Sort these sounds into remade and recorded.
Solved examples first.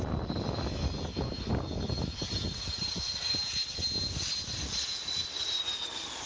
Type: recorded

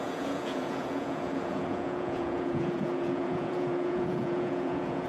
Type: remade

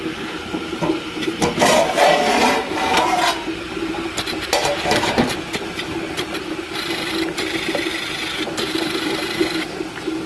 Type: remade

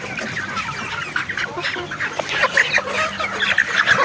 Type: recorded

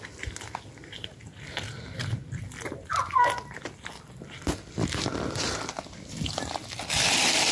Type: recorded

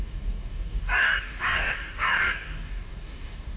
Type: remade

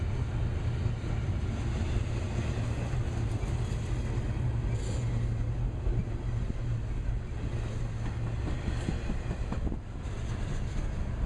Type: recorded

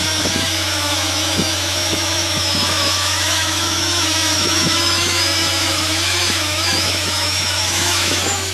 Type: remade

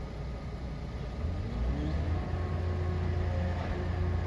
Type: recorded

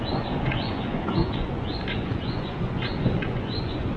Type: remade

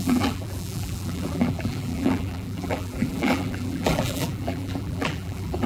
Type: remade